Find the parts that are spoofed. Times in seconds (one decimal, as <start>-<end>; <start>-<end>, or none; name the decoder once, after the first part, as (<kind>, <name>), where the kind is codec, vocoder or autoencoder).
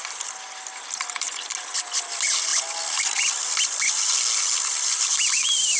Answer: none